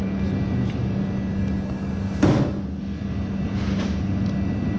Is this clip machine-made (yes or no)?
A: no